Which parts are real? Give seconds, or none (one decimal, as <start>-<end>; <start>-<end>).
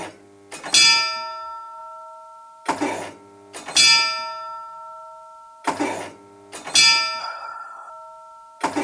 0.0-7.2; 7.9-8.8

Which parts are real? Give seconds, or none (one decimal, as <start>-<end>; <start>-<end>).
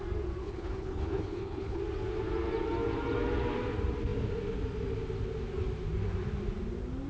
0.0-0.4; 1.8-7.1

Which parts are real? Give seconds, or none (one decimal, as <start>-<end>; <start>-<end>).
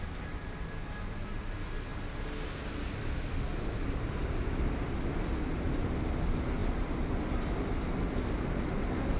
0.0-9.2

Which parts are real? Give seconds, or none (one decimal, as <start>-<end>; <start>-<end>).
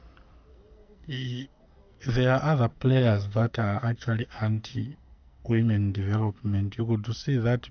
0.0-0.5; 2.1-2.7; 6.8-7.7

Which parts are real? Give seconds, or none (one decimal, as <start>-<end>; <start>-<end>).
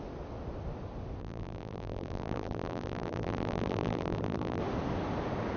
0.0-1.2; 4.6-5.6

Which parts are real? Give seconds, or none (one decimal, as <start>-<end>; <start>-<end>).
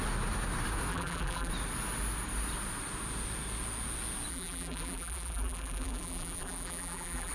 0.0-0.9; 1.5-4.3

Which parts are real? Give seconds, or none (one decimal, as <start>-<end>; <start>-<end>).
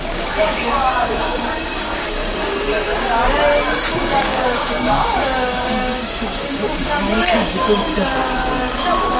3.2-3.9